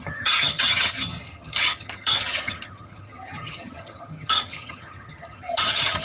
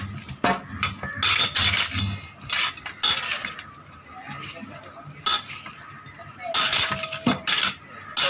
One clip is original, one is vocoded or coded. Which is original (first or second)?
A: second